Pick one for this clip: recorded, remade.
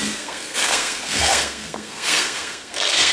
remade